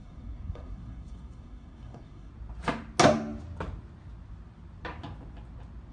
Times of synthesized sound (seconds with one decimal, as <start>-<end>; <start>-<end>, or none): 0.0-2.3